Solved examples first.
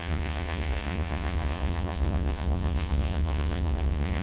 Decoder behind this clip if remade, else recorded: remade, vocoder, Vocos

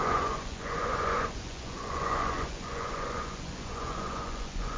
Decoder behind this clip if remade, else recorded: remade, vocoder, Vocos